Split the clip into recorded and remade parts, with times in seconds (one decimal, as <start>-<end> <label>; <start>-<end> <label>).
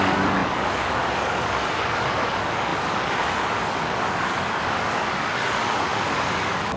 0.0-6.8 remade